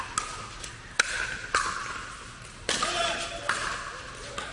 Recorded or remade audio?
recorded